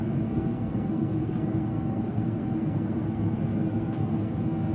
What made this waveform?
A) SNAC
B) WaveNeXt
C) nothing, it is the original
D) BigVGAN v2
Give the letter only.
A